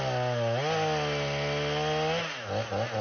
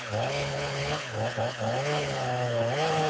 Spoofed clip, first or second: second